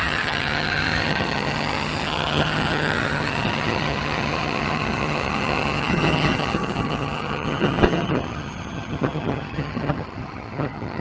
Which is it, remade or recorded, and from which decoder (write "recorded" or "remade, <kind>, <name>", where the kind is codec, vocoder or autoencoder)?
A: remade, vocoder, HiFi-GAN